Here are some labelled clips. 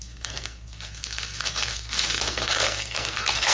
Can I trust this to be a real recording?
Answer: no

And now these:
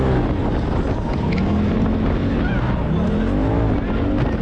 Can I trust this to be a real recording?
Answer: yes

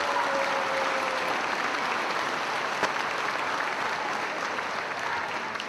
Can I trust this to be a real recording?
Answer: yes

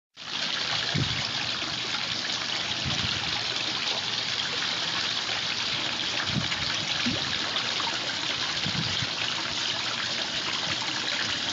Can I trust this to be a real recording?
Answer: no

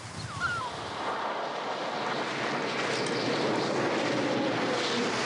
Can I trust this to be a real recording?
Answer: yes